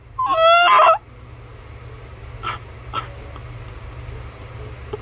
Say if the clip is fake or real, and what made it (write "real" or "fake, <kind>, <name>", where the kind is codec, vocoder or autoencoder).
real